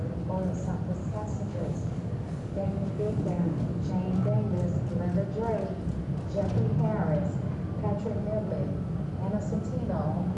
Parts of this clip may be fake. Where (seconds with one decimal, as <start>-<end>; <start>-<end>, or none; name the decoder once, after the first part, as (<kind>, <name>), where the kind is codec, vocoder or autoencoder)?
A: 1.0-3.9 (codec, DAC)